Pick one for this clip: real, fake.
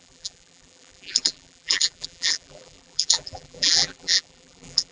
fake